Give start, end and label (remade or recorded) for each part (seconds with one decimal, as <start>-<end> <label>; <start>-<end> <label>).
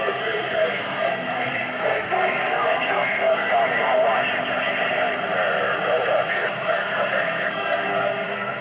0.0-3.5 remade; 3.5-6.3 recorded; 6.3-8.6 remade